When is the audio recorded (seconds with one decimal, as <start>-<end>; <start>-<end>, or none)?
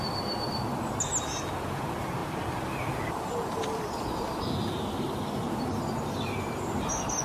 0.0-7.2